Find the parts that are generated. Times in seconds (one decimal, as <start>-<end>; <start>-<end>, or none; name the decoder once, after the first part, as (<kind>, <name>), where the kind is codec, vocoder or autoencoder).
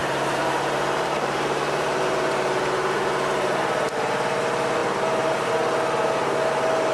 0.0-3.5 (vocoder, BigVGAN v2)